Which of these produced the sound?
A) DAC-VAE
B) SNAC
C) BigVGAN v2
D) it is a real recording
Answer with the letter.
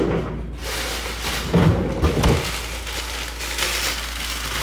D